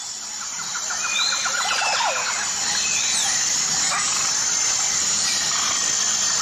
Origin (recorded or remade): recorded